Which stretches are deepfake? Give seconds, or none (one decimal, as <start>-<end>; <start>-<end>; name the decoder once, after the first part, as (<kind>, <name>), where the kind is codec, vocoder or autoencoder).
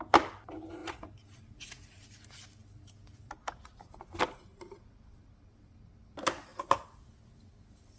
none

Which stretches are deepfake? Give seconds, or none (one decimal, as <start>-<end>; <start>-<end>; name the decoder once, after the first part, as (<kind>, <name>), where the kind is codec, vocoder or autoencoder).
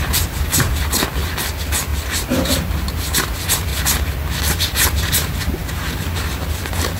0.0-3.7 (vocoder, BigVGAN v2); 4.4-7.0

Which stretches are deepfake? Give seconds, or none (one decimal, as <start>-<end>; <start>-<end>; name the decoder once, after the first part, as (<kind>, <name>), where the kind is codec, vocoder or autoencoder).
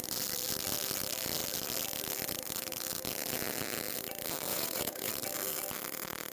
4.5-5.1 (vocoder, Vocos)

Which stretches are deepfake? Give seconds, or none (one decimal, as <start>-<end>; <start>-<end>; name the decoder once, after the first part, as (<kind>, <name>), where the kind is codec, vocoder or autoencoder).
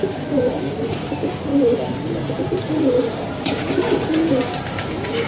0.0-5.3 (vocoder, BigVGAN v2)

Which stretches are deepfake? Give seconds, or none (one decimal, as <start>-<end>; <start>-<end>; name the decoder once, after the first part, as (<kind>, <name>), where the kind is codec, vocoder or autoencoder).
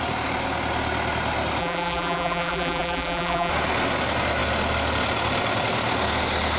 1.6-3.5 (vocoder, BigVGAN v2)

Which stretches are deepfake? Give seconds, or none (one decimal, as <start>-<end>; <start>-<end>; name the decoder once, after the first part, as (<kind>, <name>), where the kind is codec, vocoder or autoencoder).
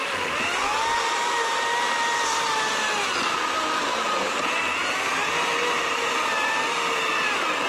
3.8-4.6 (vocoder, BigVGAN v2)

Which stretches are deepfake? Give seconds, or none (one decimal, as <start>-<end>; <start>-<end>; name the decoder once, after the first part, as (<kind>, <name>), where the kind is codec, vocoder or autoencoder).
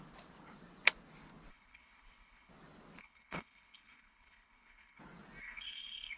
1.5-2.5 (codec, HILCodec); 3.0-5.0; 5.4-6.2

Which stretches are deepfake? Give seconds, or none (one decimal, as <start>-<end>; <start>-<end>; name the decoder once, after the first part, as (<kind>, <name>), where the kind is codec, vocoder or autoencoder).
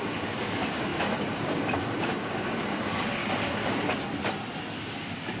0.0-3.2 (codec, DAC); 4.8-5.4